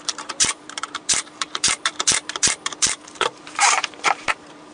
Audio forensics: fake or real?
fake